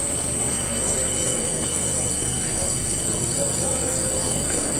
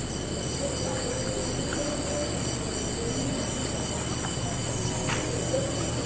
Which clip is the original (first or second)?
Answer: second